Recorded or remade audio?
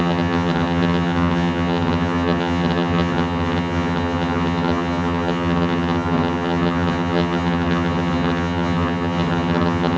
remade